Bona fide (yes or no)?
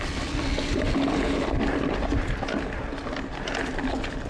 yes